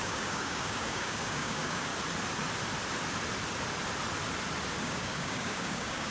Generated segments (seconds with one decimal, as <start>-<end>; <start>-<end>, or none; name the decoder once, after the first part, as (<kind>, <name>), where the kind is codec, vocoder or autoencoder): 0.0-1.9 (codec, DAC); 4.8-6.1